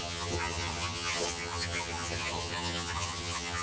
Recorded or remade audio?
remade